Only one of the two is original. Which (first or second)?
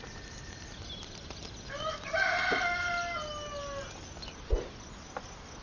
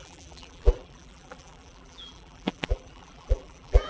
first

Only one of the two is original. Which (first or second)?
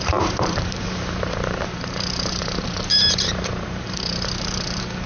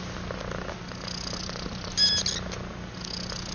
second